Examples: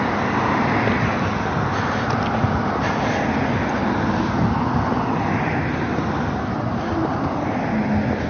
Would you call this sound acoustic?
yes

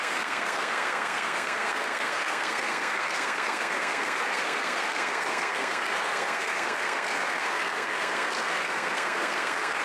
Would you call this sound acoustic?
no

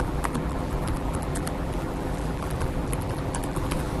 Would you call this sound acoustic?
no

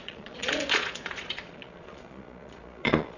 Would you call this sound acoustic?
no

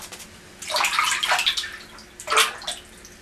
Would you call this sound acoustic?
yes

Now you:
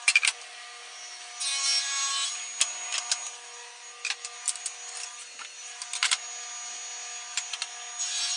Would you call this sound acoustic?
yes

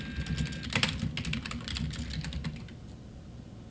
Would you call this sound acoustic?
yes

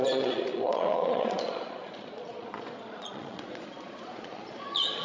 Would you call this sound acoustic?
no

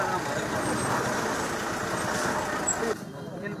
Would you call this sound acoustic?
yes